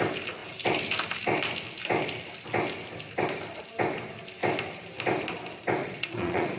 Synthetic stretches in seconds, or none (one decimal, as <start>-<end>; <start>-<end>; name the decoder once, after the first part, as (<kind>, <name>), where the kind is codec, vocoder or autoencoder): 5.8-6.6 (vocoder, Vocos)